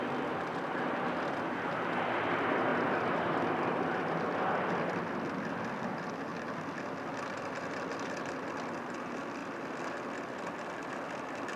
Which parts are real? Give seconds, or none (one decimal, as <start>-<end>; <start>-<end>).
0.0-11.6